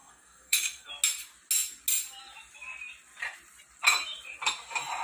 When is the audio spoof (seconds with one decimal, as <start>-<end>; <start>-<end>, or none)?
0.0-0.9